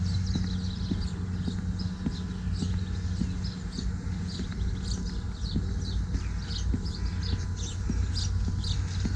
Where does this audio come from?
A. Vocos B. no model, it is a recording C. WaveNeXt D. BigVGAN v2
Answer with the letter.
B